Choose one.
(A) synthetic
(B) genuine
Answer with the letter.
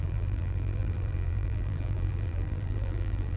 A